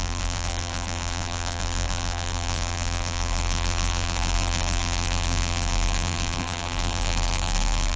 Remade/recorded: remade